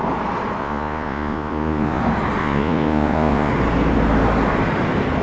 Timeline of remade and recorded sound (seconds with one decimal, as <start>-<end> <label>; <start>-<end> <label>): 0.0-0.6 recorded; 0.6-2.0 remade; 2.0-2.4 recorded; 2.4-3.5 remade; 3.5-5.2 recorded